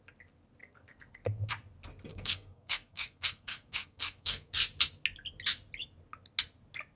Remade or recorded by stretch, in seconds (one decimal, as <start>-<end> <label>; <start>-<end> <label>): 0.0-0.6 recorded; 0.6-1.5 remade; 1.5-2.1 recorded; 2.1-4.5 remade; 4.5-7.0 recorded